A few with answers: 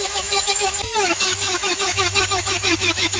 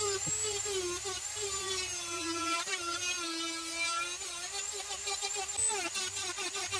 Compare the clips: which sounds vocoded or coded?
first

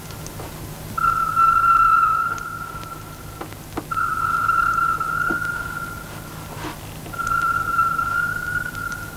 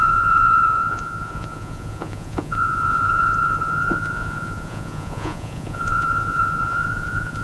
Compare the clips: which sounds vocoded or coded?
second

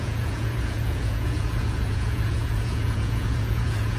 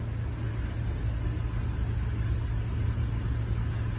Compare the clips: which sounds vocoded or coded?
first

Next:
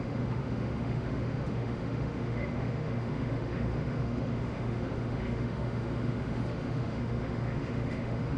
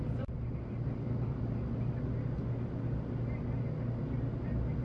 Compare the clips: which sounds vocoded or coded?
first